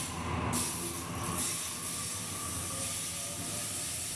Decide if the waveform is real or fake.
real